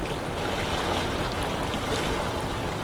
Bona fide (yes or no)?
yes